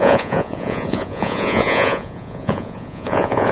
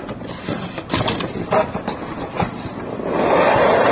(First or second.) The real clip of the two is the second